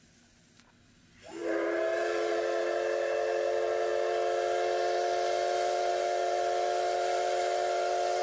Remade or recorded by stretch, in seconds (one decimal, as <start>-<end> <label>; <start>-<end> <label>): 0.0-8.2 recorded